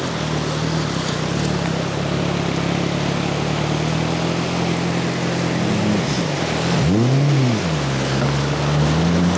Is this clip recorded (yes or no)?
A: yes